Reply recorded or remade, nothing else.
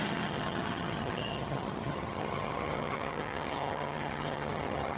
remade